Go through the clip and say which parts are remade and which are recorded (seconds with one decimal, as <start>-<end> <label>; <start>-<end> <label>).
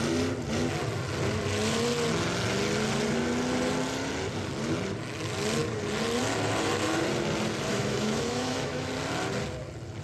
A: 0.0-7.7 recorded; 7.7-8.9 remade; 8.9-10.0 recorded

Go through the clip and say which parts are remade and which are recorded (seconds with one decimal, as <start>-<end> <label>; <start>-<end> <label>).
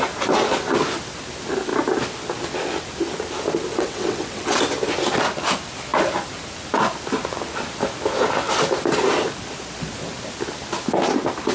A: 0.0-3.7 recorded; 3.7-4.6 remade; 4.6-11.5 recorded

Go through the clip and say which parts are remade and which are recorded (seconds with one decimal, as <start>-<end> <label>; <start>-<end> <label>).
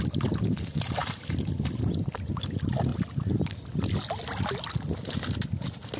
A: 0.0-6.0 recorded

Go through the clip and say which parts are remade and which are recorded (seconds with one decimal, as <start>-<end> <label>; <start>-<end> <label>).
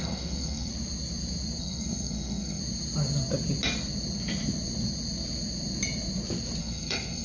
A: 0.0-0.7 remade; 0.7-1.6 recorded; 1.6-2.6 remade; 2.6-6.6 recorded; 6.6-7.2 remade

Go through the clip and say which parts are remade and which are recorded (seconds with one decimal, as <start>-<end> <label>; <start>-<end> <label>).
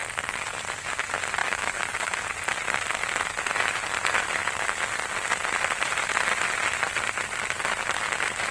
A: 0.0-1.4 recorded; 1.4-2.1 remade; 2.1-8.5 recorded